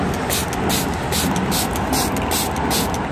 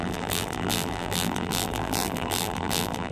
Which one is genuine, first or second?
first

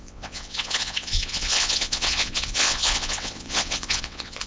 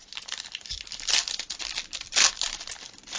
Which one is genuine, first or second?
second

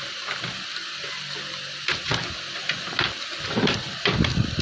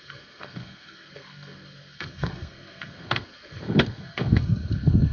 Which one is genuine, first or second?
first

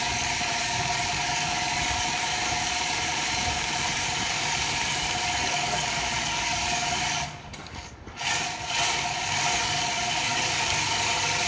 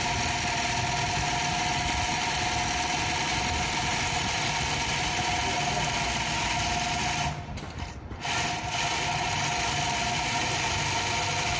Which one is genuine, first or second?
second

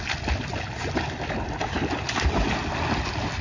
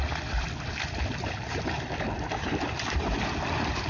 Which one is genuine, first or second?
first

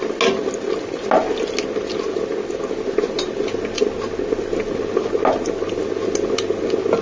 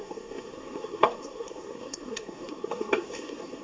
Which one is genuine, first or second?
first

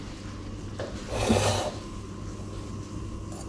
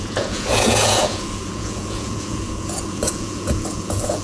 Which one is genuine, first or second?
first